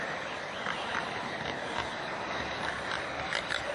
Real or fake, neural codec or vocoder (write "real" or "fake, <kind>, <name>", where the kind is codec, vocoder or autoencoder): real